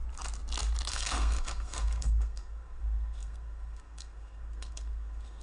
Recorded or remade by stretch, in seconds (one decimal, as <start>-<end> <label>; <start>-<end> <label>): 0.0-0.9 recorded; 0.9-5.4 remade

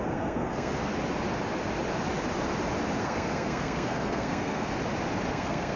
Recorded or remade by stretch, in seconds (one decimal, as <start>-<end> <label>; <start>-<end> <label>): 0.0-0.9 remade; 0.9-3.0 recorded; 3.0-4.7 remade; 4.7-5.3 recorded; 5.3-5.8 remade

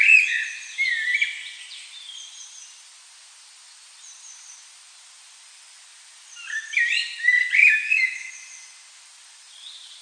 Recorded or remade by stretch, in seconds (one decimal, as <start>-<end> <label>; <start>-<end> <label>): 0.0-7.6 recorded; 7.6-8.3 remade; 8.3-10.0 recorded